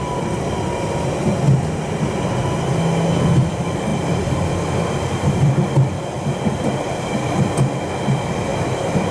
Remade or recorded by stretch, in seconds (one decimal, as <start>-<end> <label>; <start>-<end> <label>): 0.0-9.1 recorded